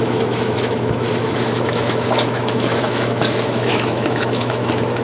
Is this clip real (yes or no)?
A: no